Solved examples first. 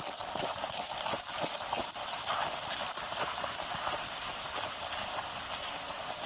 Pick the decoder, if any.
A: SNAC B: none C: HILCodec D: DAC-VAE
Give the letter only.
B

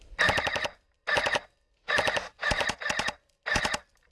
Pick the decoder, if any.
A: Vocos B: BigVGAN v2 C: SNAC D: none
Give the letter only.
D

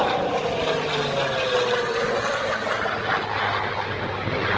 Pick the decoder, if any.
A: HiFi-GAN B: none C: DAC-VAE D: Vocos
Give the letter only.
B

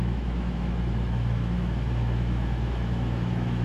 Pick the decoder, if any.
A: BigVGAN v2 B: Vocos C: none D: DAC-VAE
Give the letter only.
D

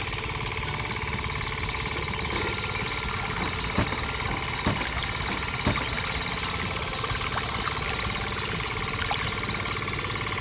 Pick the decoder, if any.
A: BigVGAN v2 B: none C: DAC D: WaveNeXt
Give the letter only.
B